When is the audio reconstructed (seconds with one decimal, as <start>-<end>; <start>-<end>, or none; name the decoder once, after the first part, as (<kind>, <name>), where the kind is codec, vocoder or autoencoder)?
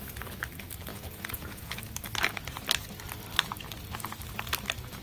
0.9-1.8 (vocoder, Vocos)